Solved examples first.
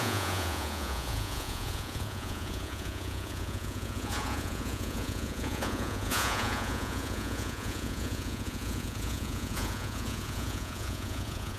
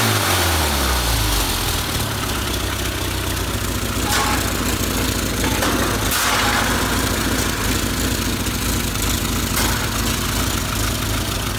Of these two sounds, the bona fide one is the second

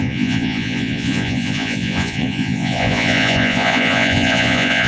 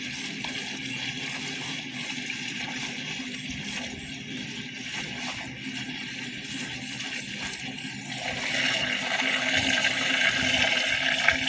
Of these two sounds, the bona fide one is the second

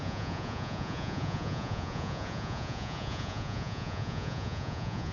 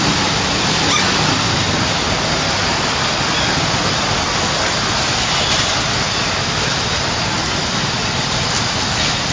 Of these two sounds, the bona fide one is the second